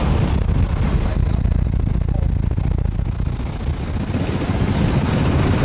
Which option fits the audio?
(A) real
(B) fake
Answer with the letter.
A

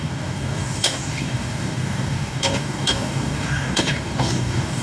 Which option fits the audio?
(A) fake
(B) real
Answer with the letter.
A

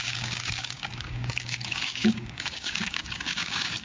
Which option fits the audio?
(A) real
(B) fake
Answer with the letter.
B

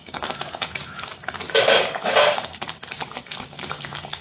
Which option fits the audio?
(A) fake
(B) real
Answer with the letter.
A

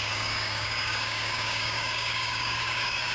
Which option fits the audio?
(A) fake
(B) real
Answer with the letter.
A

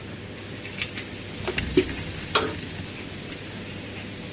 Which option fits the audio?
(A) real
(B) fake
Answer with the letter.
A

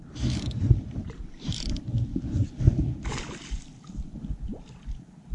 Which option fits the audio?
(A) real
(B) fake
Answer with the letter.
A